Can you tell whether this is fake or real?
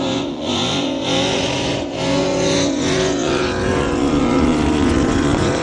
fake